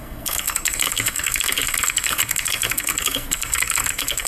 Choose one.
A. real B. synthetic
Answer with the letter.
B